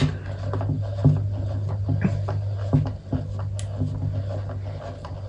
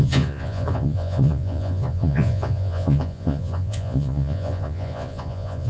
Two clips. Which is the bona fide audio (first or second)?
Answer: first